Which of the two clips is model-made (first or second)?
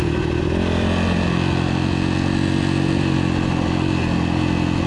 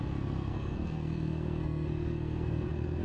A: second